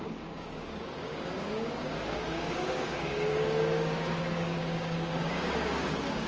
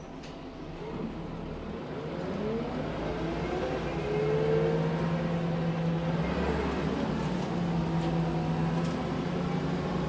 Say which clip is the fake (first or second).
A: first